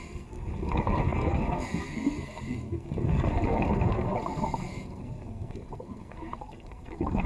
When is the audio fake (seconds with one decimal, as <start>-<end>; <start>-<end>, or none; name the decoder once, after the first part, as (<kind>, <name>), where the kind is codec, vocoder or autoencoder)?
0.0-7.3 (codec, SNAC)